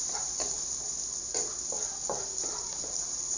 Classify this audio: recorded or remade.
remade